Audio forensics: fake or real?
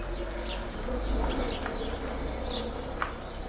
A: real